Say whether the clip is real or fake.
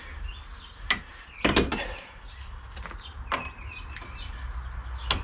real